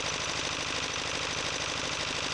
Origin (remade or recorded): recorded